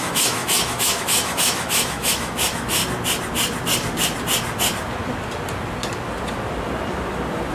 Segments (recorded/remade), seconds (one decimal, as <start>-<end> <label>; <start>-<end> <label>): 0.0-2.8 remade; 2.8-7.5 recorded